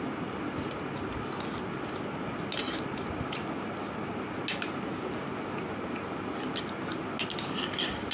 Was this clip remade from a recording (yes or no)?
no